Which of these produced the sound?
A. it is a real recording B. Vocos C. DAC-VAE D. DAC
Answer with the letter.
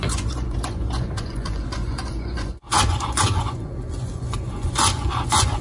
B